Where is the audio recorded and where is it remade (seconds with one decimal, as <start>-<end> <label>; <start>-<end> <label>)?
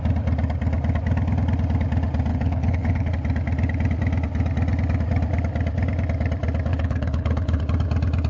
0.0-2.3 recorded; 2.3-3.1 remade; 3.1-6.7 recorded; 6.7-7.6 remade; 7.6-8.3 recorded